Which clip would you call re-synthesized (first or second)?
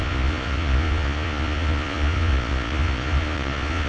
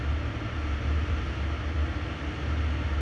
first